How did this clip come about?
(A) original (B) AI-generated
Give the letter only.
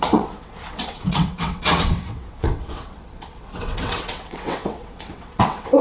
B